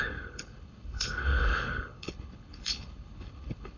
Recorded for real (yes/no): no